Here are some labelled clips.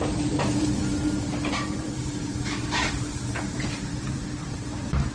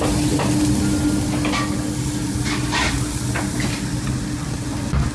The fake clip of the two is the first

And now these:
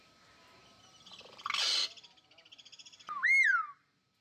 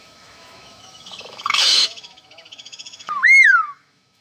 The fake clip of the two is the second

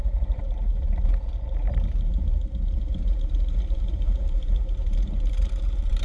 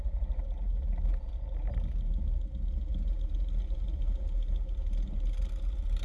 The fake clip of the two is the first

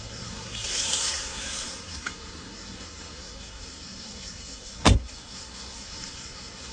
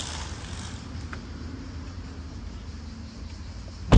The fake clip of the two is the first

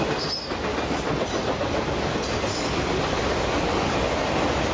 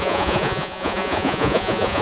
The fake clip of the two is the second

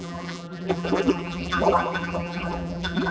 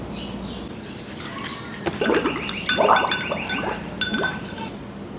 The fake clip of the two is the first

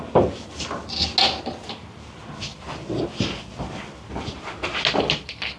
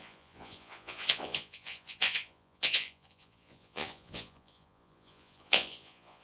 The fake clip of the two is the second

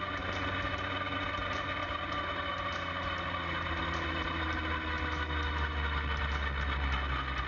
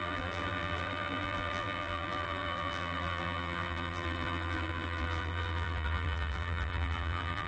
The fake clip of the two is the second